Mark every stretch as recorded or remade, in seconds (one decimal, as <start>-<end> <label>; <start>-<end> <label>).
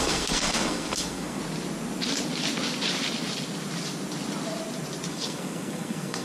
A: 0.0-1.4 remade; 1.4-5.1 recorded; 5.1-6.2 remade